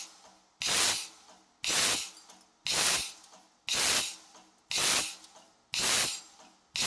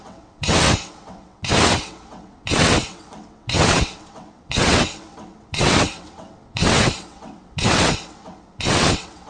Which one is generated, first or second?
second